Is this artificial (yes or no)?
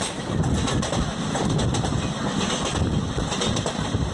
no